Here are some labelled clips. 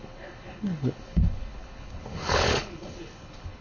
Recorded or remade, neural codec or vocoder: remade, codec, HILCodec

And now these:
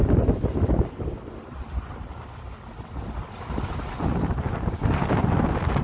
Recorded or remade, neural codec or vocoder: recorded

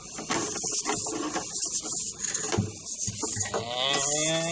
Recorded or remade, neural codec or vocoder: recorded